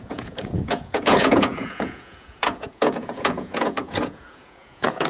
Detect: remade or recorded remade